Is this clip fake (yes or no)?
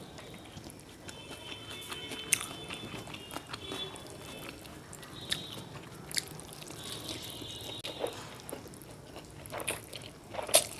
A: no